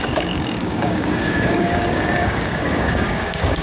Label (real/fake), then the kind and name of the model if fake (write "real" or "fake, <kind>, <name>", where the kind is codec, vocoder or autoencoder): fake, codec, DAC